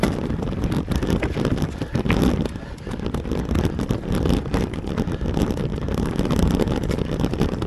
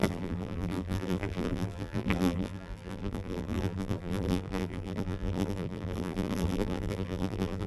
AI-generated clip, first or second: second